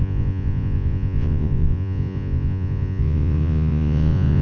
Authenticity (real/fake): fake